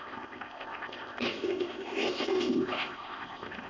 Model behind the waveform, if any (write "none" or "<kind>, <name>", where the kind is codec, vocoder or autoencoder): codec, ZipCodec